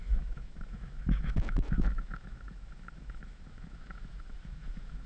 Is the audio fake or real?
fake